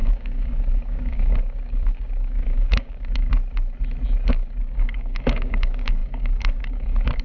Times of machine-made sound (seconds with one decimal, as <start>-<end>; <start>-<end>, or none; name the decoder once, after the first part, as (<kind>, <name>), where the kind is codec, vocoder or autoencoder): 0.0-3.3 (codec, DAC); 4.3-7.2